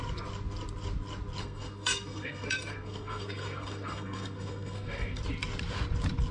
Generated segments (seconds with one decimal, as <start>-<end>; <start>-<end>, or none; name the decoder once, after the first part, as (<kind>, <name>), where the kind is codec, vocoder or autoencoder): 1.4-5.2 (codec, SNAC)